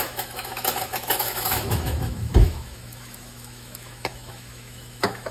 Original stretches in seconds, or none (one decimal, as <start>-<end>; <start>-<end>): none